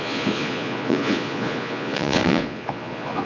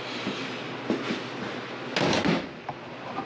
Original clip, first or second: second